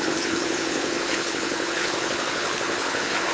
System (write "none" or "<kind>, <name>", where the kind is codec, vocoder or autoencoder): codec, HILCodec